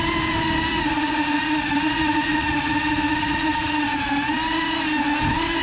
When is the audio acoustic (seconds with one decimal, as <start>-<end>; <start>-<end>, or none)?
0.0-0.7; 4.1-5.6